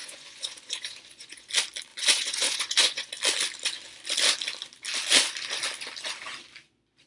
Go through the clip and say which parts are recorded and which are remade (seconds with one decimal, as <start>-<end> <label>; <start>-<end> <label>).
0.0-1.5 remade; 1.5-1.9 recorded; 1.9-3.1 remade; 3.1-7.1 recorded